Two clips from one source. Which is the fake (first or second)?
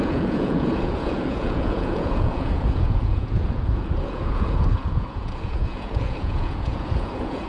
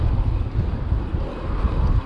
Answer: first